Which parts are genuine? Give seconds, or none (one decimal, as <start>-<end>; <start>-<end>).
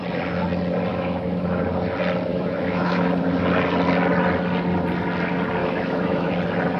0.0-0.9; 1.6-2.3; 3.1-5.6; 6.3-6.8